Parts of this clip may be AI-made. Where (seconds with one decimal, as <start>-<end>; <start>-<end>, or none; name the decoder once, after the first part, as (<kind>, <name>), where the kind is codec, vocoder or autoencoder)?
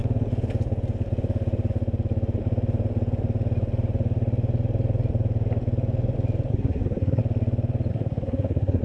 6.5-7.2 (codec, SNAC); 7.9-8.8